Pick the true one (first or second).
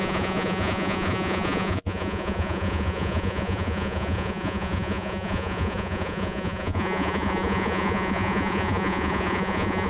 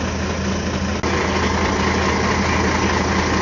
second